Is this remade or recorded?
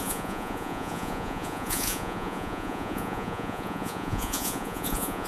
remade